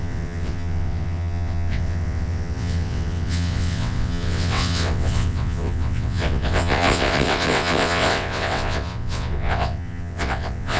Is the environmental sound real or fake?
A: fake